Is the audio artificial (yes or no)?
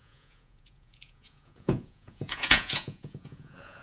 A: yes